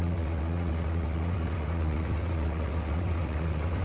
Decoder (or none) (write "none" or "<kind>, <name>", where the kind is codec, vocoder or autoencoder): vocoder, WaveNeXt